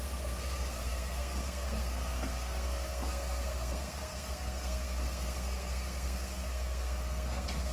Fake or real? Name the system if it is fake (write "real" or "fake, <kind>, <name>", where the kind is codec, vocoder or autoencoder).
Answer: fake, codec, SNAC